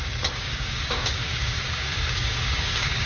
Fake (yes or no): yes